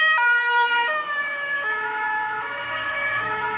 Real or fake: fake